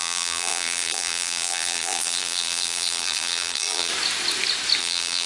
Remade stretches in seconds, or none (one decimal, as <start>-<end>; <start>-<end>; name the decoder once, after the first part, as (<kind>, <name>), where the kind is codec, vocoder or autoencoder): 0.0-3.9 (vocoder, BigVGAN v2); 4.8-5.3